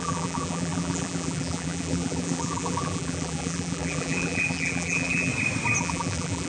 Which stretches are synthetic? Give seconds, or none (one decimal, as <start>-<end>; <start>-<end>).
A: 0.0-5.3; 5.8-6.5

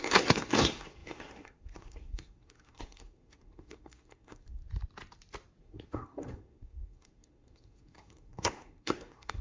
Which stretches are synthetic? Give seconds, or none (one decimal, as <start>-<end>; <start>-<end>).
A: 0.0-4.6; 5.6-9.4

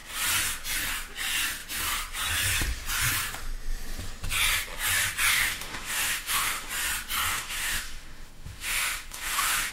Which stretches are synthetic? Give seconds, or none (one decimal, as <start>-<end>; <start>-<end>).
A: 5.3-6.7; 7.3-9.7

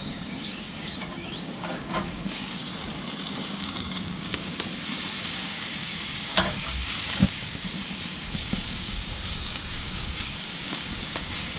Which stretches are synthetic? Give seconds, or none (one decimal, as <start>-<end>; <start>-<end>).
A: 0.0-2.6; 3.3-4.5; 5.2-11.6

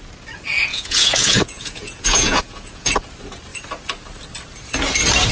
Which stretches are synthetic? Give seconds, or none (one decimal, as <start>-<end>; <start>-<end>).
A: 0.7-2.9

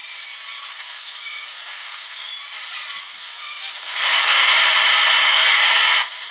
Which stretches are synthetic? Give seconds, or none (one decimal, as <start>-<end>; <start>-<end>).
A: 0.7-2.3; 3.0-4.5; 5.3-6.3

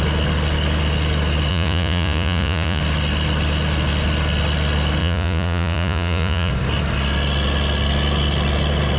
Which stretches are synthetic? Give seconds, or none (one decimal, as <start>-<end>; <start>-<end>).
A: 1.5-2.8; 5.0-6.5